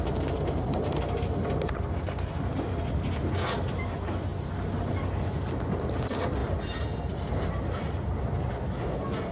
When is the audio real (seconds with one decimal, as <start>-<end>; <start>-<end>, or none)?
0.0-6.4; 7.3-9.3